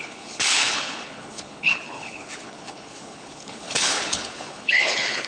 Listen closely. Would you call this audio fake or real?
fake